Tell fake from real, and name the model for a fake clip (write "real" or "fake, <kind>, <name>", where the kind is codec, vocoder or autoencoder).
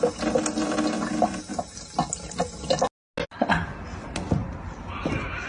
real